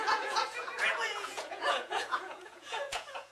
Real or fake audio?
fake